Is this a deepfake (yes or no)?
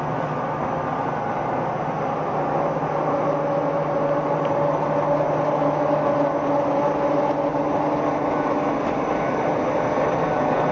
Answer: no